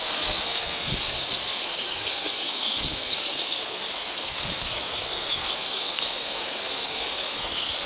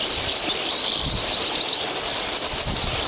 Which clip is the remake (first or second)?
first